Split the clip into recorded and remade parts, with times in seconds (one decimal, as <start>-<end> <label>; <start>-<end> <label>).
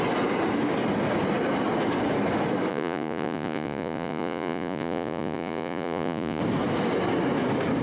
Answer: 0.0-2.7 recorded; 2.7-6.4 remade; 6.4-7.8 recorded